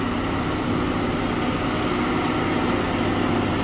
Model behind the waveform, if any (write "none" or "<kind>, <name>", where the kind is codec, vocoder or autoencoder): none